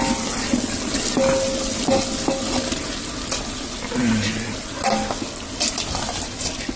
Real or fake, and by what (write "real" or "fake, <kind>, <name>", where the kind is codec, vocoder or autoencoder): real